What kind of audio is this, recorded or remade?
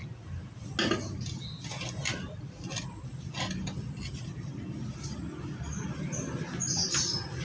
recorded